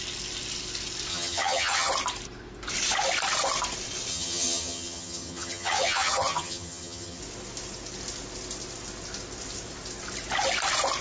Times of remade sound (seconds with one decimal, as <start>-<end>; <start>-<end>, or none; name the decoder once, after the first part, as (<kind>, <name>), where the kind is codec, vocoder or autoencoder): 1.1-1.9 (vocoder, HiFi-GAN); 4.1-7.2